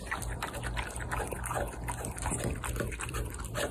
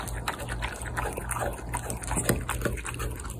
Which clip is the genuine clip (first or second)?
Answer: second